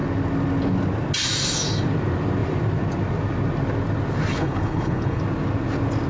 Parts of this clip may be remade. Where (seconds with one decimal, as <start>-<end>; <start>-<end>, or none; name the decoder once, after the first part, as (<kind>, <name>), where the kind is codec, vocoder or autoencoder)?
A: 4.3-5.2 (codec, HILCodec)